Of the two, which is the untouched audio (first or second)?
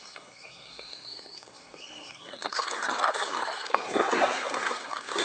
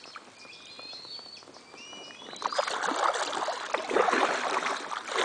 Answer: second